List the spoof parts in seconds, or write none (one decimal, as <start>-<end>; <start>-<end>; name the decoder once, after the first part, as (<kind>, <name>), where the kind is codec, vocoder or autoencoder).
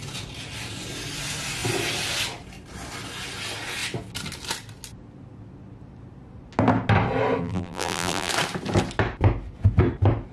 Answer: 7.4-8.3 (vocoder, BigVGAN v2)